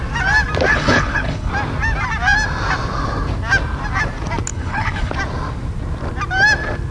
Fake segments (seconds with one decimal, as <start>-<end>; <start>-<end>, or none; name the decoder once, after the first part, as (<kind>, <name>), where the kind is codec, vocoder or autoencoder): 0.7-1.5 (codec, HILCodec); 4.5-5.1